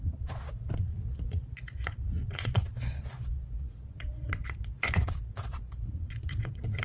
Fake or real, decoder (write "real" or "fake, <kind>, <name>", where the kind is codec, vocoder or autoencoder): fake, vocoder, Vocos